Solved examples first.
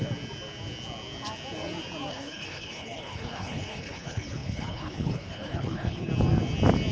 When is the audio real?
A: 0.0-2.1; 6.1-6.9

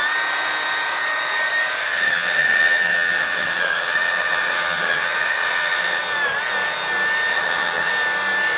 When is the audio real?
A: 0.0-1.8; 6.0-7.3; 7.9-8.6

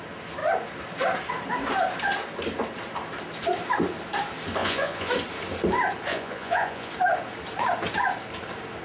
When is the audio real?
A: 0.0-4.6; 5.1-6.1; 6.9-8.8